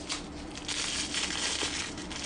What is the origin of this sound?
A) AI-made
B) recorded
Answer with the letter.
B